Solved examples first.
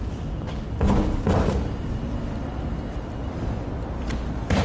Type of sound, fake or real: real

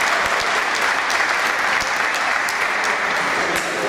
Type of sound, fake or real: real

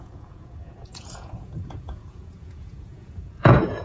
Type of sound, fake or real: fake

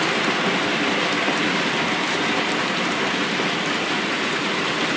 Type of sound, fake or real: real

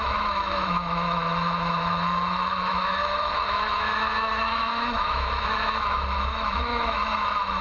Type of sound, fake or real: fake